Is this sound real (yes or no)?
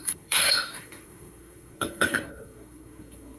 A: no